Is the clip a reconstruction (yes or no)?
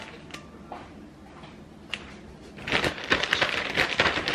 no